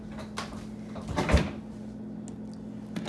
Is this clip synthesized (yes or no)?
no